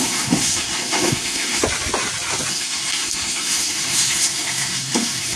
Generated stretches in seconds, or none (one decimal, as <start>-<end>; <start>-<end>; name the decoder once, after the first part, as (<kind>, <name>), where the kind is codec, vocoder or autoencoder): 0.0-1.6 (codec, SNAC); 2.5-5.4